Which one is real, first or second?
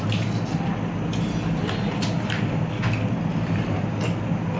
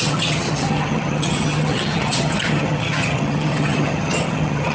first